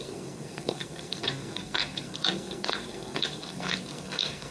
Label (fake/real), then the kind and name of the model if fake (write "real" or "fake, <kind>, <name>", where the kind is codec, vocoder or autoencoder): fake, codec, SNAC